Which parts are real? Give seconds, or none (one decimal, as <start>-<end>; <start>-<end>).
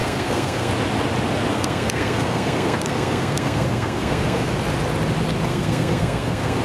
0.7-1.5; 4.5-5.5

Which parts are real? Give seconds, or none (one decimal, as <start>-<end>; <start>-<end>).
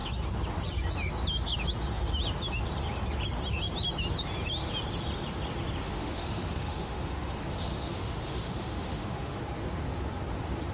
0.0-5.8; 9.4-10.7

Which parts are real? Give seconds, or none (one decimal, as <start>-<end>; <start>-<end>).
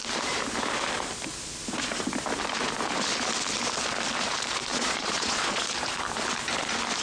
0.0-4.7; 5.6-7.0